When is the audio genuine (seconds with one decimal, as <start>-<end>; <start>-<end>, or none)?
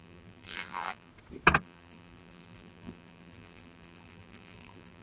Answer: 1.1-1.6